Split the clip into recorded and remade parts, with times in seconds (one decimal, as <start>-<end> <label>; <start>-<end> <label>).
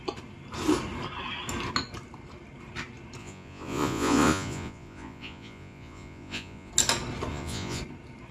0.0-3.2 recorded; 3.2-6.7 remade; 6.7-7.3 recorded; 7.3-7.8 remade; 7.8-8.3 recorded